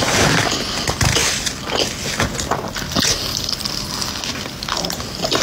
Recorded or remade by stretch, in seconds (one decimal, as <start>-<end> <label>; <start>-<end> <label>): 0.0-5.4 recorded